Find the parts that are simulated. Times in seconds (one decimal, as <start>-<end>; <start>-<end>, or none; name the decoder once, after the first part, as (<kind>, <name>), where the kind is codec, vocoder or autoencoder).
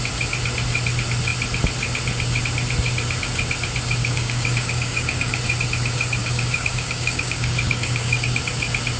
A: 4.0-5.4 (codec, DAC); 6.2-8.4